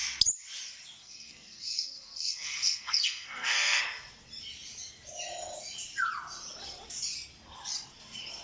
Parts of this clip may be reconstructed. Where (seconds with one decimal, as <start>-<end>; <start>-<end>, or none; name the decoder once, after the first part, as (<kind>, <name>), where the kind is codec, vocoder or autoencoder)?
1.0-3.8 (codec, SNAC)